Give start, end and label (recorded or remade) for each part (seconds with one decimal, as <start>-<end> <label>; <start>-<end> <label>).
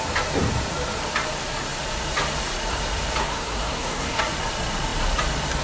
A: 0.0-3.2 recorded; 3.2-4.2 remade; 4.2-5.6 recorded